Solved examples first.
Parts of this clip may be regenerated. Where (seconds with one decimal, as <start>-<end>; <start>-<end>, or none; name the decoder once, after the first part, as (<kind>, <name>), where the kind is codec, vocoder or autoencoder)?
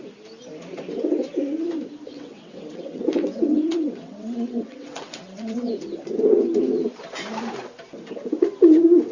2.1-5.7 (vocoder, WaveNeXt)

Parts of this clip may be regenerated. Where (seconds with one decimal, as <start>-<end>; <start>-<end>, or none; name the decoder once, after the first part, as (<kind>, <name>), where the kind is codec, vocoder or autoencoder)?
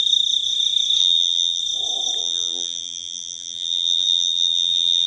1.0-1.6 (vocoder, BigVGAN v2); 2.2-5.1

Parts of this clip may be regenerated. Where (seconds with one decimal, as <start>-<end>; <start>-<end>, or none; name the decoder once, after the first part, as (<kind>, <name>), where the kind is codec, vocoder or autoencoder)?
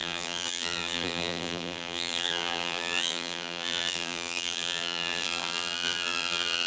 0.0-6.7 (vocoder, BigVGAN v2)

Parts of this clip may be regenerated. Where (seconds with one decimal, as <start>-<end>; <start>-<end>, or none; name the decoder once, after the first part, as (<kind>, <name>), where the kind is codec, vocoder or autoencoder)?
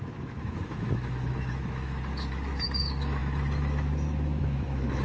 0.0-5.0 (autoencoder, DAC-VAE)